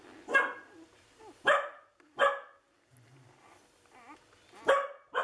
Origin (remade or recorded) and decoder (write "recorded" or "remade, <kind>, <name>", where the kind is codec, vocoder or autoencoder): recorded